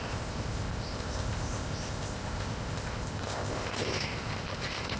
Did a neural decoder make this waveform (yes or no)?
yes